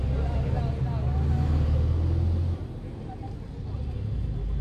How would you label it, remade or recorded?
recorded